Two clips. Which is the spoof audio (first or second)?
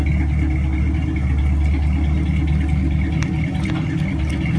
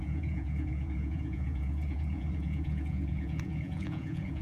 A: second